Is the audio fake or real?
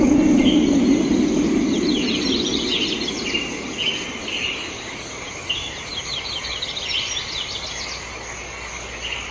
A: real